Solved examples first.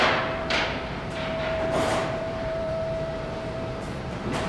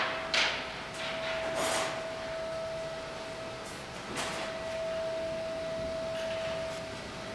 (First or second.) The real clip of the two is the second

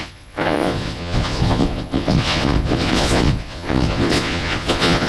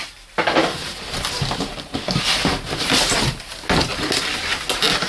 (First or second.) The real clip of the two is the second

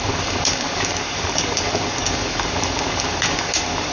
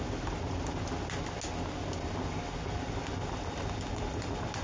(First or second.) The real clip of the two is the second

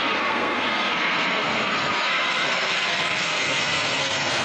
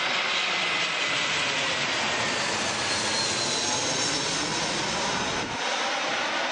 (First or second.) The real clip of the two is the second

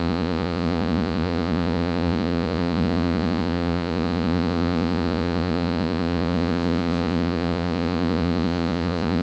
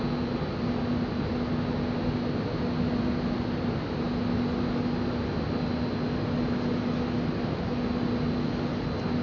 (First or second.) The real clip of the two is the second